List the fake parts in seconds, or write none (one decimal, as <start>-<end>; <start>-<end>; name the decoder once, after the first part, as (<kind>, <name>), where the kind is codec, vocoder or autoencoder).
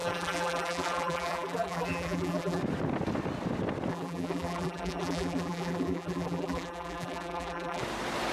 0.0-2.6 (vocoder, BigVGAN v2); 3.9-7.8